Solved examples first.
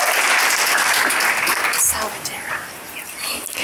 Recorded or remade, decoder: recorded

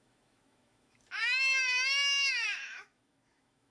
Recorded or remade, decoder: remade, autoencoder, DAC-VAE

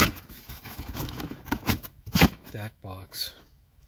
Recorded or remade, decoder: remade, autoencoder, DAC-VAE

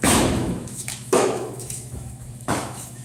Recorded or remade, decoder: remade, autoencoder, DAC-VAE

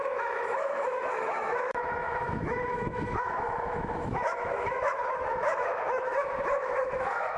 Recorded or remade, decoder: remade, autoencoder, DAC-VAE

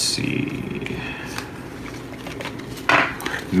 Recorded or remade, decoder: recorded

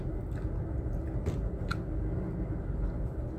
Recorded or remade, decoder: recorded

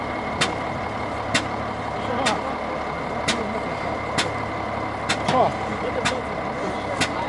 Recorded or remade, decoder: recorded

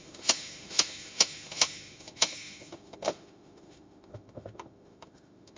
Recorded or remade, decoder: remade, autoencoder, DAC-VAE